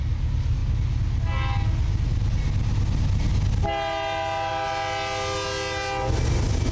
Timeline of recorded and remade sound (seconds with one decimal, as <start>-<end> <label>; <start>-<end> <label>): 0.0-6.7 recorded